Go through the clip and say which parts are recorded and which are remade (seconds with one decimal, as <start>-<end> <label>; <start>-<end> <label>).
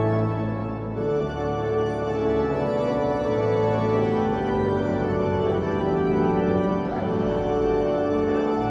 0.0-0.6 remade; 0.6-1.2 recorded; 1.2-2.2 remade; 2.2-4.5 recorded; 4.5-6.7 remade; 6.7-8.7 recorded